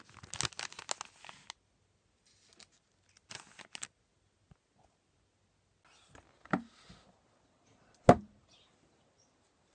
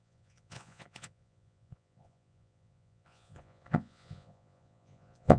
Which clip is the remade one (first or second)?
second